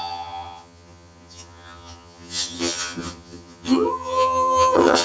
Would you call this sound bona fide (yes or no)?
no